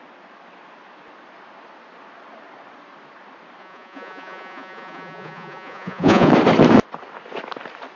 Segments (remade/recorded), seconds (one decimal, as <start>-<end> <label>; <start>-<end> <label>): 0.0-3.6 recorded; 3.6-6.3 remade; 6.3-8.0 recorded